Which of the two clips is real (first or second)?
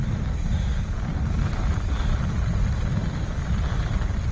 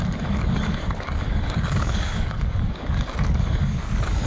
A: first